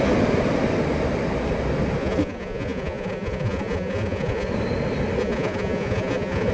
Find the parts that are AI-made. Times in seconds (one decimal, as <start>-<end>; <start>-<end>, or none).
2.0-4.5; 5.2-6.5